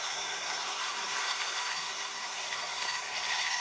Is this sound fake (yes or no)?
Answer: yes